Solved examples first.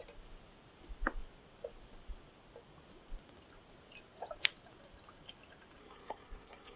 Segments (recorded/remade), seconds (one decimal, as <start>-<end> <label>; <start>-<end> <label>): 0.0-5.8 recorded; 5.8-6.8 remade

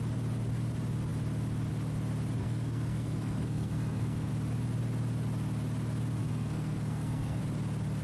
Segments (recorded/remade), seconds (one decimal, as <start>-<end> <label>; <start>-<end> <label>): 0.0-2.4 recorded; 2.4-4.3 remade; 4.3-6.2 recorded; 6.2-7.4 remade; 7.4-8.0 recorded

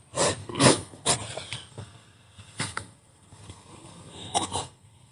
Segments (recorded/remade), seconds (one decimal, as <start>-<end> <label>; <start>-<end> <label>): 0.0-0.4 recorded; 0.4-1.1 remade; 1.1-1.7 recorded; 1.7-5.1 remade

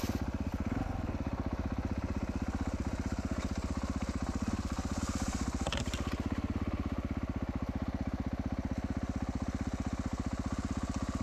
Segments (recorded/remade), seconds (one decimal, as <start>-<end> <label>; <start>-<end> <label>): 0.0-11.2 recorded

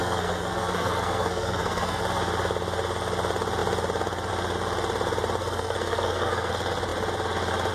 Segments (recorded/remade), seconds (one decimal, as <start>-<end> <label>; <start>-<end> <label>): 0.0-2.0 remade; 2.0-5.4 recorded; 5.4-6.5 remade; 6.5-7.7 recorded